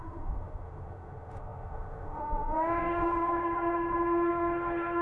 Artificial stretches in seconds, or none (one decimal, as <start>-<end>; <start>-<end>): 0.0-5.0

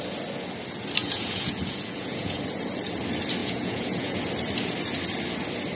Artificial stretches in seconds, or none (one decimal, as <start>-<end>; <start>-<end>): 1.0-2.4; 3.4-4.2

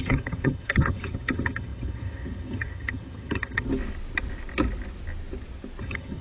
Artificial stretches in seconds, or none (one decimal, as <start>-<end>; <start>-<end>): 0.0-3.7; 5.8-6.2

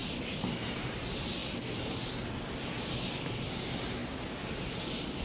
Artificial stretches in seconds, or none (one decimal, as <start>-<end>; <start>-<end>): none

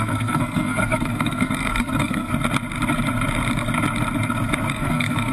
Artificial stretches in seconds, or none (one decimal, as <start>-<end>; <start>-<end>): 0.0-2.3; 4.7-5.3

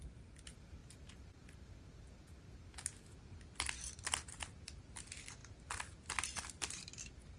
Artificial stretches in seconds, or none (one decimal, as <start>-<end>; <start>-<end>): none

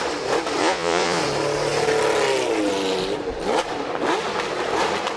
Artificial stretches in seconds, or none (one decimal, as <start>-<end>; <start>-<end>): 0.6-1.2

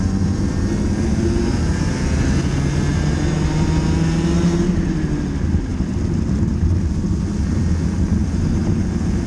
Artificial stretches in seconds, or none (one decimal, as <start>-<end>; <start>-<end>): none